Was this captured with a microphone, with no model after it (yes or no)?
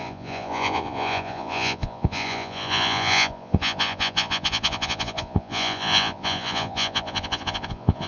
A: no